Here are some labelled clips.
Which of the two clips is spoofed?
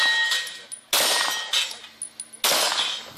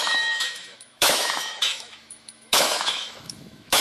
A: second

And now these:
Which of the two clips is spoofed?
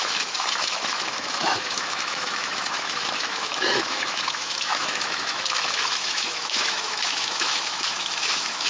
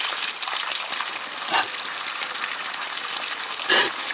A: first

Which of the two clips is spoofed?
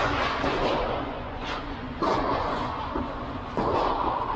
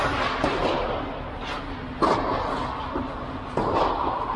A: first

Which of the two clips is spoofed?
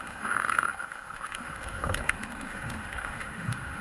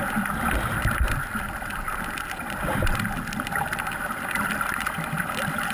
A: first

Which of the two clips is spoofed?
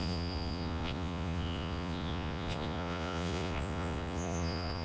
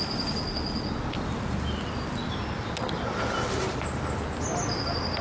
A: first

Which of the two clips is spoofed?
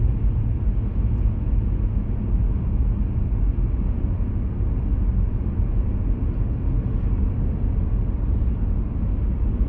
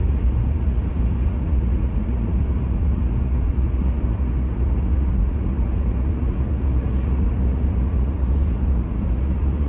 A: second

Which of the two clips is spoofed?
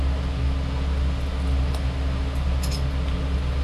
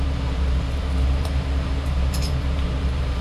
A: second